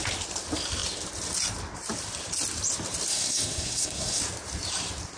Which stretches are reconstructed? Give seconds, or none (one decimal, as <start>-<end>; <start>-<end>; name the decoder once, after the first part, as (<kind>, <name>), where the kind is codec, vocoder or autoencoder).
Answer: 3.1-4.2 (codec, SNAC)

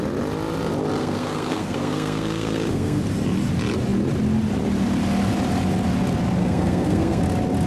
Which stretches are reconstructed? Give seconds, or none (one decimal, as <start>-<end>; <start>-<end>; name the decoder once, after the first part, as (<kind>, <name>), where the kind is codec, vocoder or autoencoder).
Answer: 1.0-3.0 (codec, SNAC); 6.4-7.2

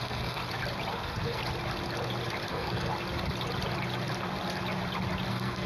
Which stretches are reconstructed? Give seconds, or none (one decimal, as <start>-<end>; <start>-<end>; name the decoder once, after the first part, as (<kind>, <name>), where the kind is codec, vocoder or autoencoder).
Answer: 0.0-0.4 (codec, SNAC); 0.9-1.4; 2.5-2.9; 5.3-5.7

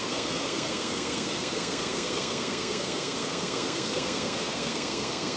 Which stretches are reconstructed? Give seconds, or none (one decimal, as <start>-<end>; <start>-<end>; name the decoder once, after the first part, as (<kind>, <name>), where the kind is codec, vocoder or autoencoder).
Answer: 0.0-5.4 (codec, SNAC)

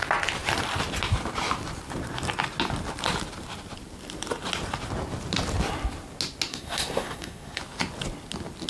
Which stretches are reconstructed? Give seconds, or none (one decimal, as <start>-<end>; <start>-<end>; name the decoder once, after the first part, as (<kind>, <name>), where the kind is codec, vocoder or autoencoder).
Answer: 6.5-7.6 (codec, SNAC)

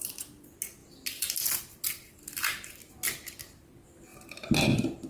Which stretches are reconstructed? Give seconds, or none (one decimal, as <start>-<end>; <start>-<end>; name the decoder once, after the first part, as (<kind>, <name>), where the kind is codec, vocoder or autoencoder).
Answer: none